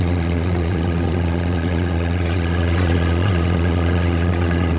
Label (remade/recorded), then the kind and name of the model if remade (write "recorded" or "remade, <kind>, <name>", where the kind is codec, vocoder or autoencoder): remade, vocoder, Vocos